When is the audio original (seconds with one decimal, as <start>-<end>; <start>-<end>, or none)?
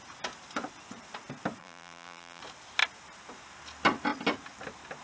0.0-1.6; 2.4-5.0